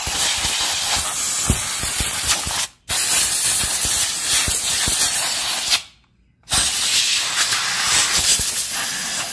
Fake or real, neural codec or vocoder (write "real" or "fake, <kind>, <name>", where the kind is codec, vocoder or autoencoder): real